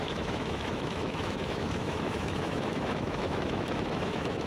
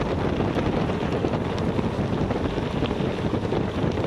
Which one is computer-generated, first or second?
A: first